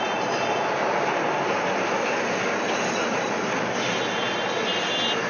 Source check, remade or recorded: recorded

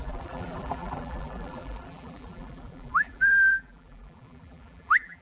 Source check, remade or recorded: remade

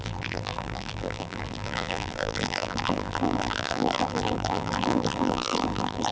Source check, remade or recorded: remade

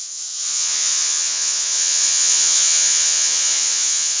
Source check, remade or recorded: remade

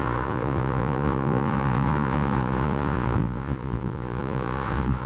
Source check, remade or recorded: remade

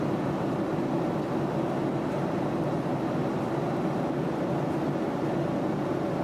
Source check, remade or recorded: recorded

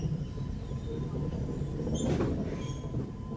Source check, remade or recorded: remade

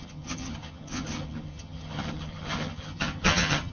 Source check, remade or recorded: remade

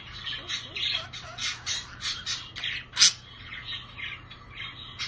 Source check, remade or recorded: recorded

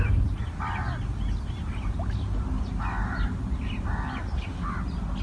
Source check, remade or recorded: recorded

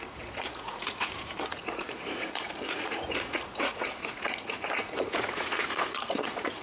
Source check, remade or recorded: remade